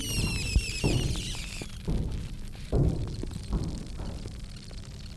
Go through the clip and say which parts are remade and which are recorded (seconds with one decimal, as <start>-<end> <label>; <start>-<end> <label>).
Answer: 0.0-0.4 recorded; 0.4-3.5 remade; 3.5-5.2 recorded